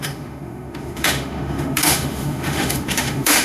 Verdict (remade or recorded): remade